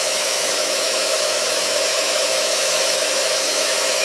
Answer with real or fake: fake